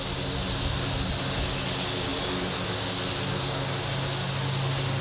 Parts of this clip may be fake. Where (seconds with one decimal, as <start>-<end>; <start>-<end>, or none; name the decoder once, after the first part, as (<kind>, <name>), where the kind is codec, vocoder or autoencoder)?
none